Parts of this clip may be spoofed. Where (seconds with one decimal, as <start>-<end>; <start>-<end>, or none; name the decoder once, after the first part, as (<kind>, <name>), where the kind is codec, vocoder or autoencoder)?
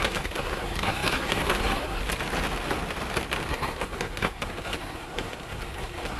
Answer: 0.0-2.0 (codec, SNAC); 3.5-6.2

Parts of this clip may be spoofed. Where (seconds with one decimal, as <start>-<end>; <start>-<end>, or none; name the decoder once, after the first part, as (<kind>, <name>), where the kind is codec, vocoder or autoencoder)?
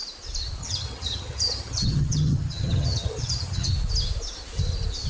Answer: 0.6-3.7 (vocoder, HiFi-GAN)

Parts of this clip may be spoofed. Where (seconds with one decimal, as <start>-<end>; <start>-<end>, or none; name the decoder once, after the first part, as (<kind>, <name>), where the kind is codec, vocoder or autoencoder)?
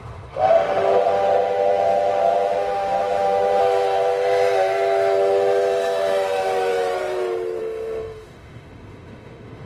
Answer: 0.0-3.6 (autoencoder, DAC-VAE); 7.6-9.7